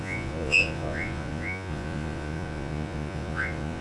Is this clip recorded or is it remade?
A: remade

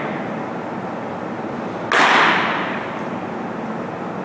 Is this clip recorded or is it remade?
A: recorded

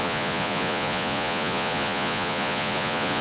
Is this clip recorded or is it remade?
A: remade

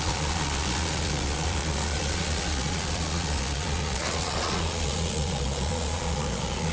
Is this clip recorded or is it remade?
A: remade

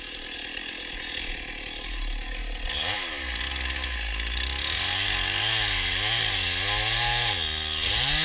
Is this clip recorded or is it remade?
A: recorded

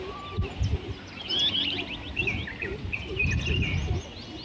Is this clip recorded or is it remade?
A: recorded